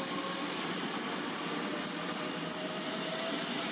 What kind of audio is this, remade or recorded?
recorded